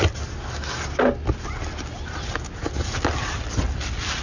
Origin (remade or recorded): recorded